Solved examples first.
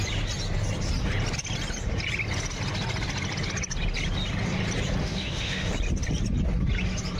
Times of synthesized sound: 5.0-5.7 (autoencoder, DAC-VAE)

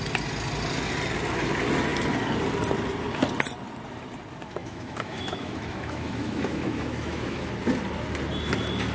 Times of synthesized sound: 4.6-7.5 (autoencoder, DAC-VAE)

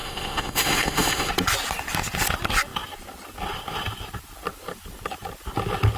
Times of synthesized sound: 0.0-1.3 (autoencoder, DAC-VAE)

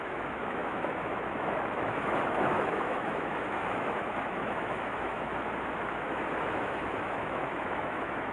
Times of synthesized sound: 0.0-5.3 (autoencoder, DAC-VAE); 5.9-8.3

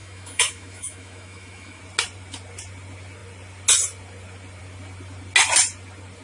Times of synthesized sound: 0.0-1.8 (autoencoder, DAC-VAE)

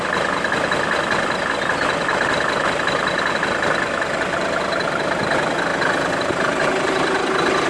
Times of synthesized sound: none

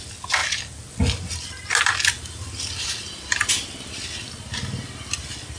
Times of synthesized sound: none

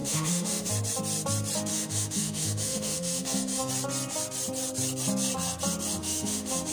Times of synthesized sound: 0.0-0.7 (autoencoder, DAC-VAE); 1.7-3.7; 6.0-6.7